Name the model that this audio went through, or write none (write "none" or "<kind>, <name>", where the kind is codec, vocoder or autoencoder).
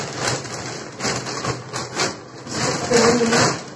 none